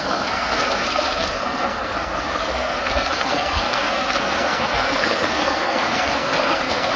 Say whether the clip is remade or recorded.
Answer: remade